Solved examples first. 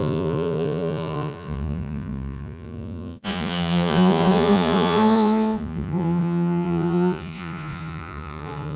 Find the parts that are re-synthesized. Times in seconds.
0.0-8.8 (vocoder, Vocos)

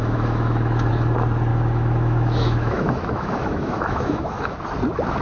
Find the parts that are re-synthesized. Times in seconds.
0.0-0.9 (autoencoder, DAC-VAE); 1.5-4.6

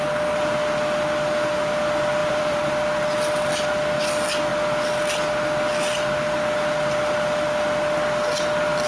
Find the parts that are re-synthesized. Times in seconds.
2.2-2.7 (vocoder, BigVGAN v2)

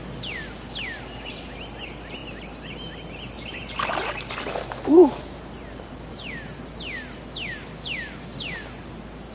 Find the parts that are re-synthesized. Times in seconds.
none

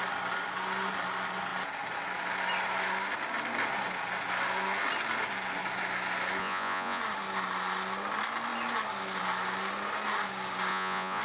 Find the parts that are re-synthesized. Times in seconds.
6.4-7.0 (vocoder, Vocos); 10.7-11.2

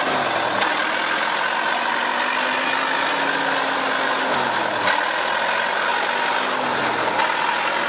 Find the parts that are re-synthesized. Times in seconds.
none

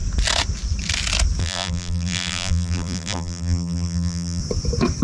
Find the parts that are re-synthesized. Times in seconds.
1.4-4.4 (vocoder, BigVGAN v2)

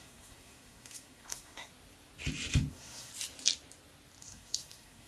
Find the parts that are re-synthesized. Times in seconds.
0.0-1.7 (codec, SNAC); 2.7-3.1; 4.2-5.1